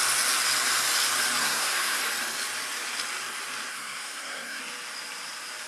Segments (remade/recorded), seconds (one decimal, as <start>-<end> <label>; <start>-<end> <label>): 0.0-1.4 recorded; 1.4-2.0 remade; 2.0-3.7 recorded; 3.7-4.6 remade; 4.6-5.7 recorded